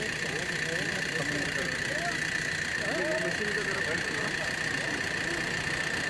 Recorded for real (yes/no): yes